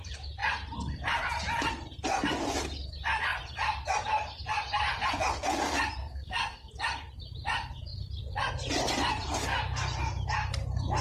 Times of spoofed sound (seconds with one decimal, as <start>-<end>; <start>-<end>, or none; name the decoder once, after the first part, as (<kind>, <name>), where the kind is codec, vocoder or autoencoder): 6.0-6.7 (codec, SNAC)